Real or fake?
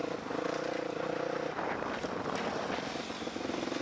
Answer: real